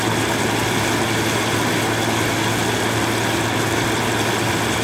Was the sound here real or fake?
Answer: real